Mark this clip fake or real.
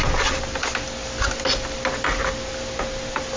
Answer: real